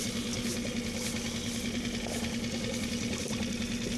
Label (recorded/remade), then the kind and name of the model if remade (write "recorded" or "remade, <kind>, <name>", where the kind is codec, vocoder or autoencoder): recorded